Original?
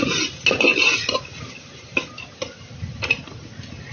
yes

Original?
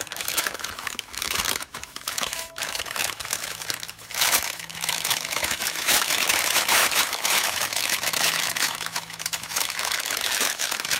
no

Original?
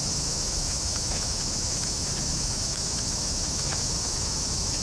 no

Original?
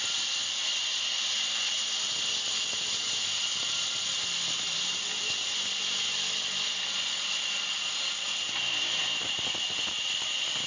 yes